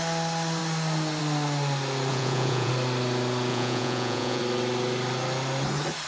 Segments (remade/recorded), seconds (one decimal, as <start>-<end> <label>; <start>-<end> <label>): 0.0-2.1 recorded; 2.1-2.7 remade; 2.7-3.5 recorded; 3.5-4.4 remade; 4.4-6.1 recorded